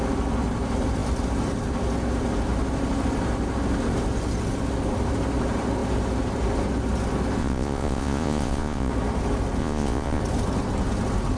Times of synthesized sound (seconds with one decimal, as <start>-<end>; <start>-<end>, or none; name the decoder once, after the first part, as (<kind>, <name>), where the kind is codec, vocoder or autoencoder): 7.4-8.9 (vocoder, Vocos); 9.6-10.2